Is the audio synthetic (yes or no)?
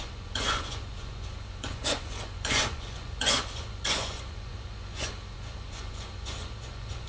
yes